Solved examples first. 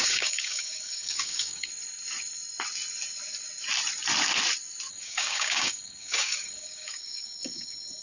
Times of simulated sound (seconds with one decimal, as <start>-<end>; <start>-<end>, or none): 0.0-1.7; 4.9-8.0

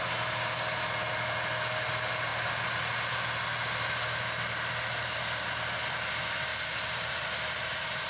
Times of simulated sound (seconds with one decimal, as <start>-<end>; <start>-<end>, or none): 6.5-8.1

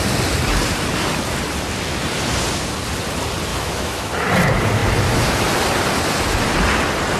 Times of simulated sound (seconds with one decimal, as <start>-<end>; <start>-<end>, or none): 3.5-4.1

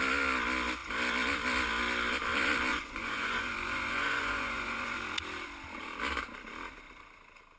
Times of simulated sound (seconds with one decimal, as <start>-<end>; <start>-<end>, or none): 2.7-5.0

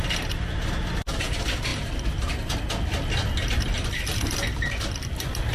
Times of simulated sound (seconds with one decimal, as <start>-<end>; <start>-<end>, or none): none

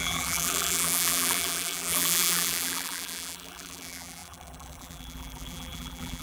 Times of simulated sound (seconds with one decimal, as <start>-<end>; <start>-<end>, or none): 0.0-6.2

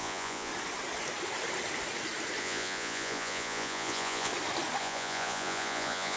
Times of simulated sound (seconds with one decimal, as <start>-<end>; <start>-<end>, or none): 0.0-0.5; 2.4-4.3; 4.8-6.2